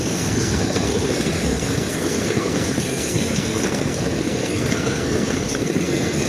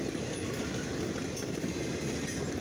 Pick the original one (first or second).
second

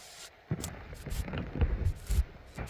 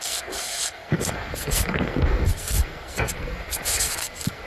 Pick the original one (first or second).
first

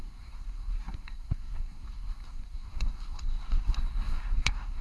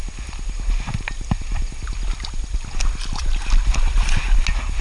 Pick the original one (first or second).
second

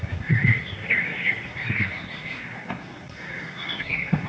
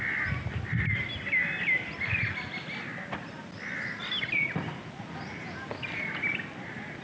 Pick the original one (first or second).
second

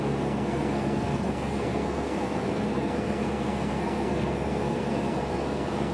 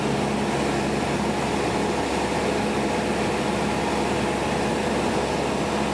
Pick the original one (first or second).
second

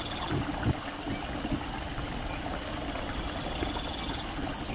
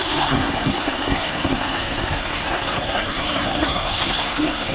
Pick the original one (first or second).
first